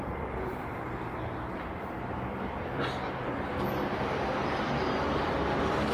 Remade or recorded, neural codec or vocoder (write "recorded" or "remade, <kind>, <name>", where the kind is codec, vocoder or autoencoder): remade, vocoder, BigVGAN v2